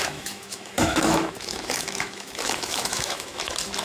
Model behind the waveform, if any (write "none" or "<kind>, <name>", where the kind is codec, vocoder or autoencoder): autoencoder, DAC-VAE